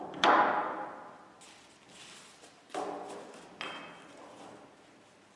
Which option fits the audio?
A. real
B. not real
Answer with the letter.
A